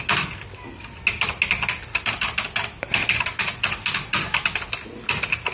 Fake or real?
real